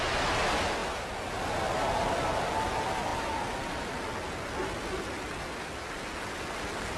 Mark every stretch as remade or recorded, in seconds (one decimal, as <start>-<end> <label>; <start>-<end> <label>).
0.0-7.0 recorded